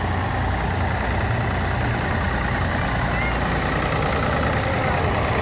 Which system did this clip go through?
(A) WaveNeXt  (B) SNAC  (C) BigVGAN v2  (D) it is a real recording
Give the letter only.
D